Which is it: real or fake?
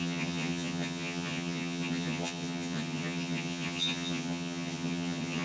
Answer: fake